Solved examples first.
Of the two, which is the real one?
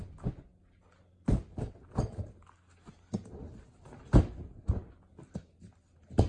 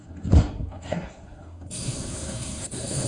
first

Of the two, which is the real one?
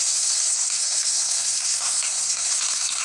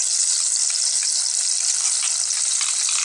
second